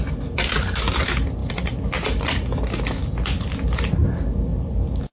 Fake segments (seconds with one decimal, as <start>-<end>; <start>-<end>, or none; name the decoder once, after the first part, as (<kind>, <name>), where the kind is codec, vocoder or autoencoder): none